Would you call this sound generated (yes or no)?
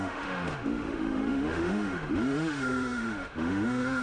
yes